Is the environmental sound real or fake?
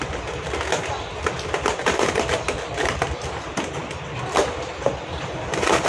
real